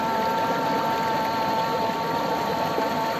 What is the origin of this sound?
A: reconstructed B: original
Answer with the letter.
B